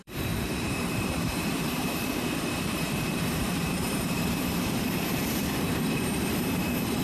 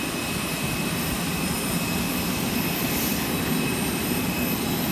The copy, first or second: first